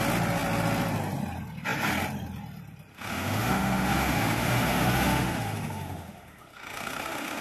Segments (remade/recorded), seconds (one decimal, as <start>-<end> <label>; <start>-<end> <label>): 0.0-2.9 recorded; 2.9-7.4 remade